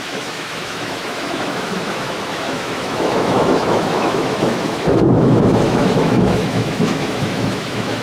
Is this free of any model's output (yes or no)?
no